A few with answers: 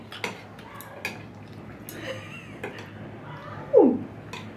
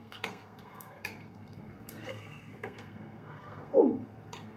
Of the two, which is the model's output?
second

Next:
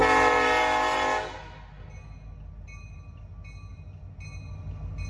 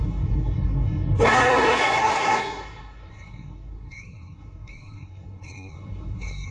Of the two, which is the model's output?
second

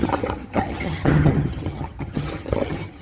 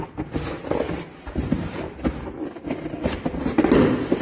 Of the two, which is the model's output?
first